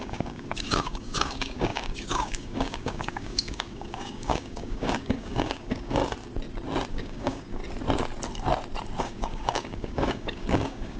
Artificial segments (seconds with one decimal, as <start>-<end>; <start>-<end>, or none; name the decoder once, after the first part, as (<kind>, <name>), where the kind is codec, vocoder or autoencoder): 0.0-6.0 (codec, DAC); 6.9-7.6; 9.0-11.0